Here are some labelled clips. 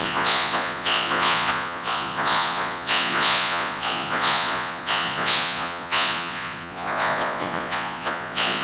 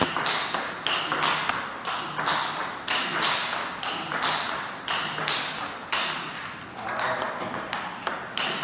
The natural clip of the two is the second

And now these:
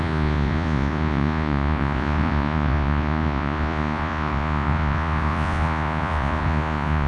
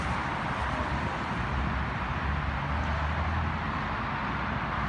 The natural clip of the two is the second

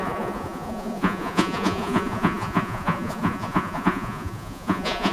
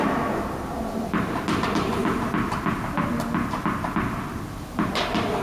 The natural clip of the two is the second